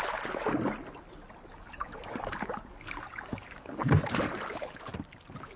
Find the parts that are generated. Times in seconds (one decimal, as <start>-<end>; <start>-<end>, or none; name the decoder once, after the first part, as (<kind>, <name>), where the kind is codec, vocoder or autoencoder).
1.5-3.9 (codec, DAC)